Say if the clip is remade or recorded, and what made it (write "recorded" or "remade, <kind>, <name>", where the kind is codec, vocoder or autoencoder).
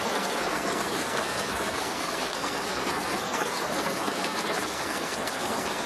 remade, codec, SNAC